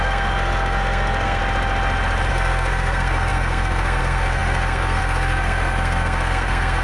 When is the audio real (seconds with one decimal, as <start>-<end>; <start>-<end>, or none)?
1.4-2.3